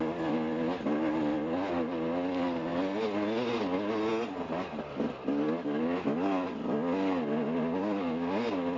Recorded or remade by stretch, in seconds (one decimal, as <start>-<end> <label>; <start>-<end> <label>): 0.0-8.8 recorded